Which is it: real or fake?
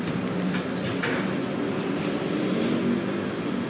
real